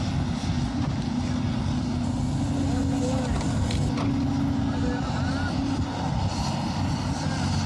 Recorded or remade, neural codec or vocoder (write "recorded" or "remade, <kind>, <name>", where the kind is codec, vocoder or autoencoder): recorded